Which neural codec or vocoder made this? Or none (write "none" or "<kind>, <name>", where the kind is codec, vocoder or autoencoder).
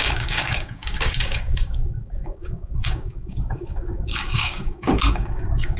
codec, DAC